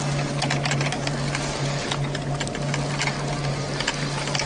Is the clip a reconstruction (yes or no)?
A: no